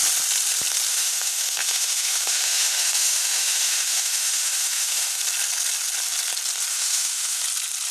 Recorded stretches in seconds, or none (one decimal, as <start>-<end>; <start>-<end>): 0.0-0.9; 5.2-6.7; 7.4-7.9